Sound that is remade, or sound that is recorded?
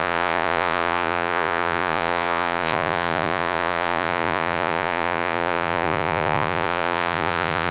remade